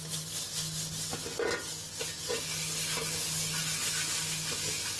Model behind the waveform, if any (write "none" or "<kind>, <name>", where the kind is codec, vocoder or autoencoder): none